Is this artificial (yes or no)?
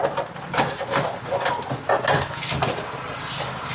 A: no